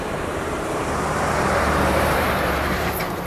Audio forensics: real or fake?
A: fake